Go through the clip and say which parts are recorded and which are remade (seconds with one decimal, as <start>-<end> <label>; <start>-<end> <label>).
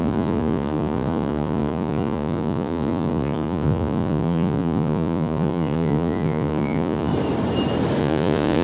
0.0-7.1 remade; 7.1-8.0 recorded; 8.0-8.6 remade